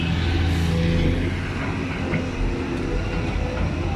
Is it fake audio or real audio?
real